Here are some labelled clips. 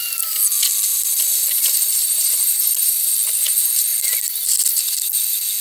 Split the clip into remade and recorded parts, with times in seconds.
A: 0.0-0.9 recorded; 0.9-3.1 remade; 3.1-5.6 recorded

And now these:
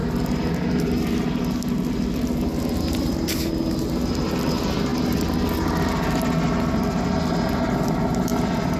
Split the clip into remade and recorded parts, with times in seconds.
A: 0.0-8.8 recorded